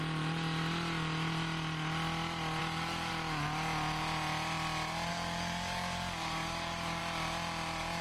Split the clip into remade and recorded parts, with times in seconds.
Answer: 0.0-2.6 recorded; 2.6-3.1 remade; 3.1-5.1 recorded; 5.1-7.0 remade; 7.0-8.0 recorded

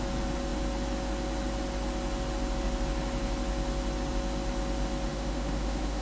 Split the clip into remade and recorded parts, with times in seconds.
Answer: 0.0-5.1 recorded; 5.1-6.0 remade